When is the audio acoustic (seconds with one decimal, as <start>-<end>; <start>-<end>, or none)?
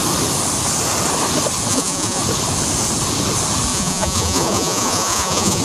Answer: 0.0-1.7; 2.2-3.7